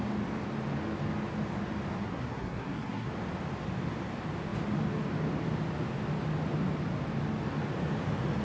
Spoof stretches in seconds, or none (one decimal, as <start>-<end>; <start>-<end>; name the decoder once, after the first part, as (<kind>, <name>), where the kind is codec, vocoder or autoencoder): 2.0-3.1 (codec, SNAC)